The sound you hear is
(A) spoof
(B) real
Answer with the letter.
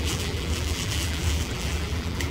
A